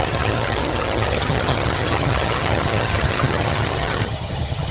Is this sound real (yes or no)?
no